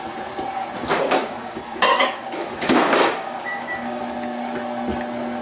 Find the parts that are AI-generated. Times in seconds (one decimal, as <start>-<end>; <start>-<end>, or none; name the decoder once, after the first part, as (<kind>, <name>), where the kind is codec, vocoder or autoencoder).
0.8-4.0 (codec, DAC)